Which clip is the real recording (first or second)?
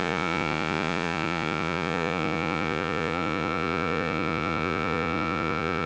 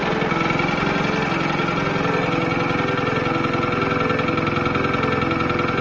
second